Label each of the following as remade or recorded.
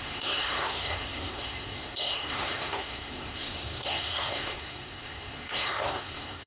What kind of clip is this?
remade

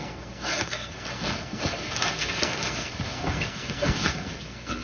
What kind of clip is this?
remade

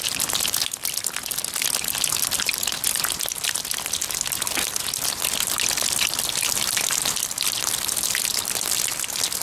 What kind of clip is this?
recorded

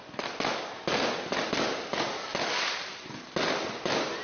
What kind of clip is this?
recorded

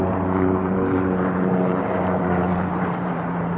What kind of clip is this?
remade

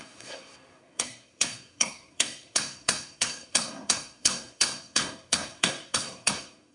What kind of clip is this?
remade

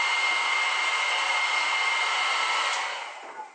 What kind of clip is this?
recorded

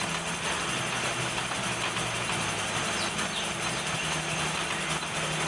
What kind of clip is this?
recorded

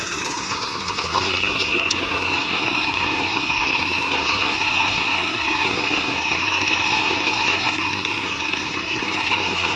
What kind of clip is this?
remade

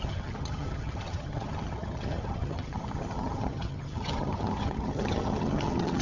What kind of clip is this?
remade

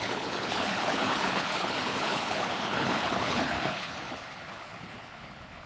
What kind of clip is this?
remade